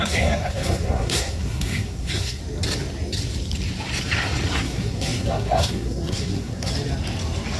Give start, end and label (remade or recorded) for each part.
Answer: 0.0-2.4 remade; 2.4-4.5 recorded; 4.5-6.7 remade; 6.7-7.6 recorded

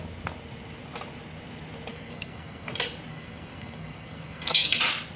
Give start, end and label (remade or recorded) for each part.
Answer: 0.0-1.9 recorded; 1.9-2.7 remade; 2.7-3.1 recorded; 3.1-4.8 remade; 4.8-5.2 recorded

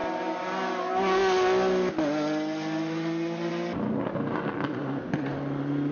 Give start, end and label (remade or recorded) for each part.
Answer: 0.0-5.9 recorded

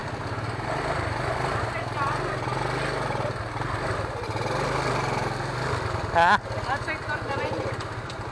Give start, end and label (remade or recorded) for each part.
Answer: 0.0-8.3 recorded

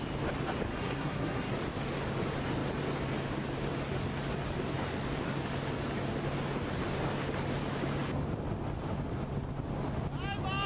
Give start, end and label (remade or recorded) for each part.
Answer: 0.0-0.7 recorded; 0.7-1.5 remade; 1.5-10.7 recorded

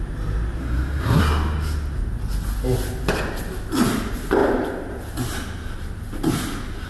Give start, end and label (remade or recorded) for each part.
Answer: 0.0-0.6 recorded; 0.6-1.2 remade; 1.2-6.9 recorded

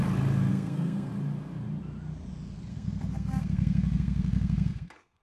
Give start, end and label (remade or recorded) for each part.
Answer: 0.0-0.5 recorded; 0.5-1.1 remade; 1.1-2.7 recorded; 2.7-5.2 remade

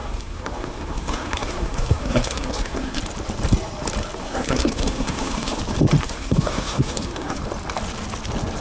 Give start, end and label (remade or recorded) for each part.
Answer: 0.0-3.0 remade; 3.0-4.2 recorded; 4.2-5.6 remade; 5.6-6.0 recorded; 6.0-7.4 remade; 7.4-8.6 recorded